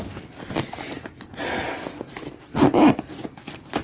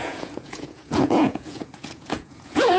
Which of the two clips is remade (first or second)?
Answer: second